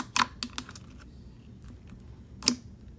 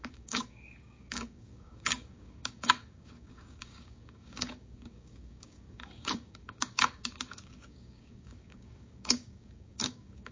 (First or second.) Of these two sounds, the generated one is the second